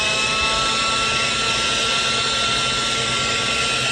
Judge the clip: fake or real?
real